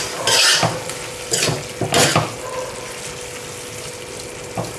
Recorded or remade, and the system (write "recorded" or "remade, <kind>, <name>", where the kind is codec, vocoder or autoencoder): recorded